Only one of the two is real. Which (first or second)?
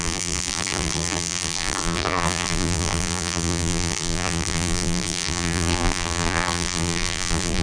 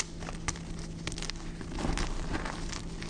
second